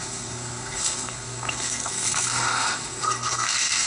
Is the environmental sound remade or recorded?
remade